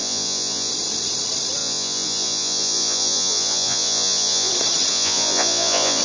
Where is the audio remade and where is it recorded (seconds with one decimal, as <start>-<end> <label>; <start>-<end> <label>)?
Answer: 0.0-0.7 remade; 0.7-1.6 recorded; 1.6-4.5 remade; 4.5-4.9 recorded; 4.9-6.0 remade